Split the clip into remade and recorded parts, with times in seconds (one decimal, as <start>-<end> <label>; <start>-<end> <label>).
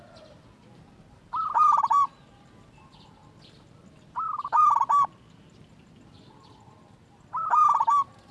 0.0-8.3 recorded